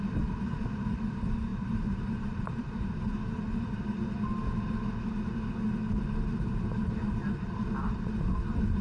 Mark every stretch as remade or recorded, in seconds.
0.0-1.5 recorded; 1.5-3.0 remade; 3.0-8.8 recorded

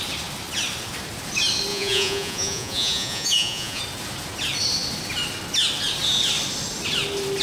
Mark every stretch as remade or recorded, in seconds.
0.0-1.7 recorded; 1.7-3.8 remade; 3.8-7.4 recorded

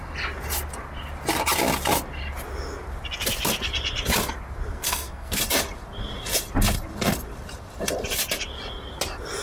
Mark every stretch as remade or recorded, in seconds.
0.0-4.7 recorded; 4.7-5.4 remade; 5.4-9.4 recorded

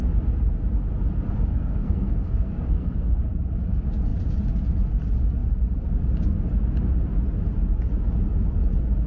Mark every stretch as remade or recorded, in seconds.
0.0-1.5 recorded; 1.5-3.2 remade; 3.2-9.1 recorded

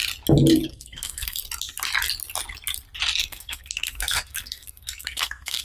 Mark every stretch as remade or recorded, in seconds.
0.0-0.7 recorded; 0.7-1.4 remade; 1.4-3.2 recorded; 3.2-5.6 remade

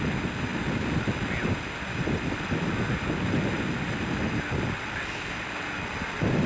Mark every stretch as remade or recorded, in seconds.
0.0-6.5 recorded

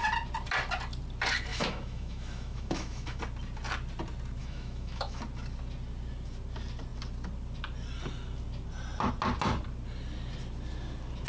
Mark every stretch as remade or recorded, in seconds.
0.0-1.5 recorded; 1.5-3.2 remade; 3.2-4.4 recorded; 4.4-5.2 remade; 5.2-11.3 recorded